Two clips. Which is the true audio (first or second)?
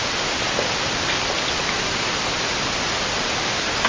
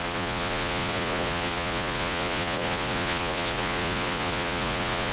first